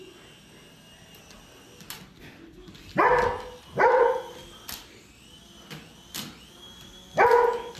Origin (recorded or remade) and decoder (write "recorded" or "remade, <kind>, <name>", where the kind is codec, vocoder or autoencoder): recorded